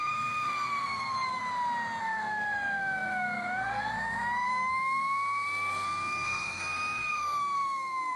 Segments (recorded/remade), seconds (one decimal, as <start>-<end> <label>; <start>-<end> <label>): 0.0-1.4 remade; 1.4-2.0 recorded; 2.0-8.2 remade

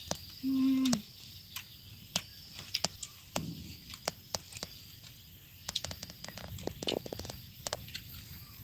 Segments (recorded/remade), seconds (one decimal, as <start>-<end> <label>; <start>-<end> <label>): 0.0-8.6 recorded

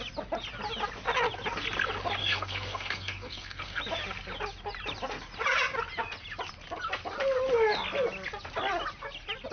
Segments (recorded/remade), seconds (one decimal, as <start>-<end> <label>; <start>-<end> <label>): 0.0-2.2 recorded; 2.2-3.8 remade; 3.8-9.5 recorded

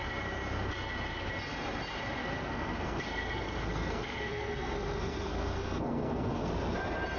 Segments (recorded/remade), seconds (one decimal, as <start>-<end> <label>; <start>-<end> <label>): 0.0-2.2 recorded; 2.2-6.5 remade; 6.5-7.2 recorded